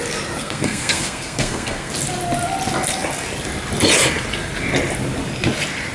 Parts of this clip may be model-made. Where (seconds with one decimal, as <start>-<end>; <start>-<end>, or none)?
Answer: 0.4-1.9